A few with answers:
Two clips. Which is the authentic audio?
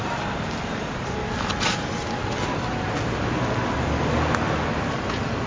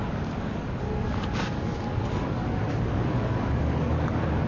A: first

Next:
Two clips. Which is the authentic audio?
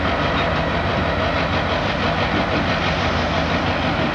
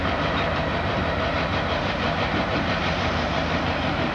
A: first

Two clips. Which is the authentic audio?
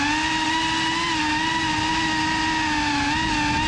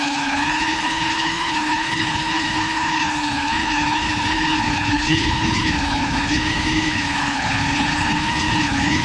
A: first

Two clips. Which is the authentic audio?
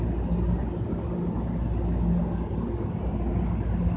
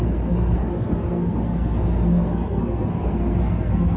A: first